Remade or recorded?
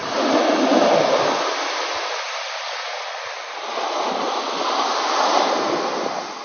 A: recorded